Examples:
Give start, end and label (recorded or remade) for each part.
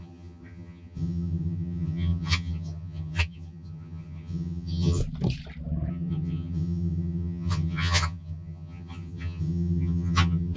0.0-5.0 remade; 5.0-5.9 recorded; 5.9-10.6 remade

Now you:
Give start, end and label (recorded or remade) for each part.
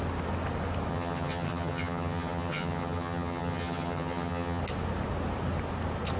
0.0-0.9 recorded; 0.9-4.6 remade; 4.6-6.2 recorded